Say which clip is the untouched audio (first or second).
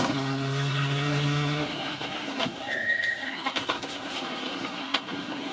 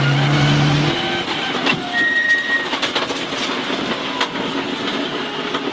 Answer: second